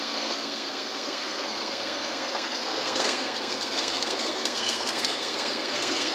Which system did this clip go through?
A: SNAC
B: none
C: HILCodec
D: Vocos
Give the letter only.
A